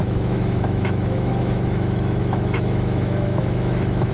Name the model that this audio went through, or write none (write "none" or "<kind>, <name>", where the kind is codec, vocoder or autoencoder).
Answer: autoencoder, DAC-VAE